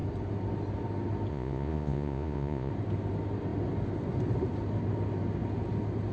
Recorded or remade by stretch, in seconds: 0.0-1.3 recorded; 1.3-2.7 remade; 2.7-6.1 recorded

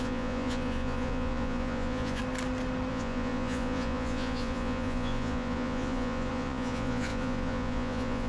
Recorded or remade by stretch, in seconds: 0.0-2.2 remade; 2.2-2.9 recorded; 2.9-8.3 remade

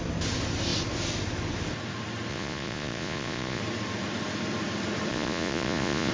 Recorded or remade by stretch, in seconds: 0.0-2.3 recorded; 2.3-3.6 remade; 3.6-5.1 recorded; 5.1-6.1 remade

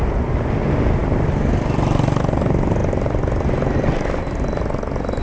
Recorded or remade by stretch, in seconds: 0.0-5.2 recorded

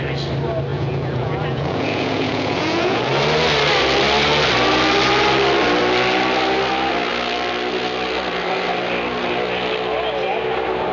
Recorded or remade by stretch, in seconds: 0.0-0.7 recorded; 0.7-3.1 remade; 3.1-10.9 recorded

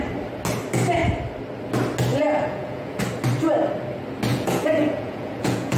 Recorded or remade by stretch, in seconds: 0.0-2.1 recorded; 2.1-3.0 remade; 3.0-4.3 recorded; 4.3-5.8 remade

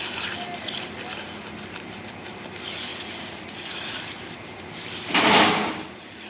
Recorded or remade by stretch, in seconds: 0.0-2.9 recorded; 2.9-4.0 remade; 4.0-6.3 recorded

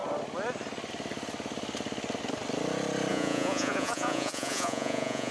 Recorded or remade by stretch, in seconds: 0.0-3.1 recorded; 3.1-5.3 remade